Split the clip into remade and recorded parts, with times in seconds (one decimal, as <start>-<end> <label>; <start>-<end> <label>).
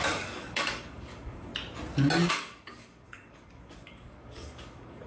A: 0.0-1.5 remade; 1.5-2.3 recorded; 2.3-5.1 remade